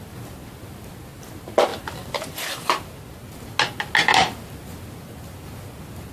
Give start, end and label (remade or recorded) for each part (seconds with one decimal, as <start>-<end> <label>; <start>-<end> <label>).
0.0-6.1 recorded